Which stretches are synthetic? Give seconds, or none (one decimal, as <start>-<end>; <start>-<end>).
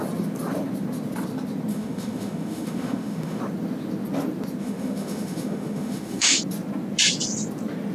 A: 1.7-3.4; 4.6-6.4